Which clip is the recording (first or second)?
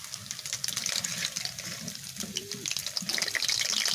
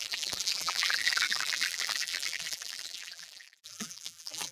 first